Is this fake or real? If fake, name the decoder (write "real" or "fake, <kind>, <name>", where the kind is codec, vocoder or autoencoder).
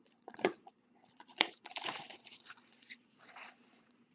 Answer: fake, vocoder, Vocos